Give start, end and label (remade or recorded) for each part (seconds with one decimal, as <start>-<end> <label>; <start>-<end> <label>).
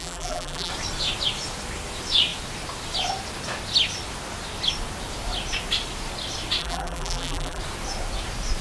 0.0-0.7 remade; 0.7-6.6 recorded; 6.6-7.6 remade; 7.6-8.6 recorded